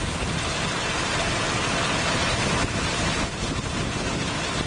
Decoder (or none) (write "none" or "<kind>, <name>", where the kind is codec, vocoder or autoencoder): none